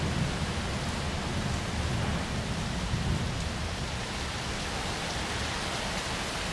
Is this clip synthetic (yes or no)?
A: no